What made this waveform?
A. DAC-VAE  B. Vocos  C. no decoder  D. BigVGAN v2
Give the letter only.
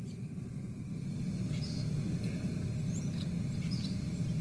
D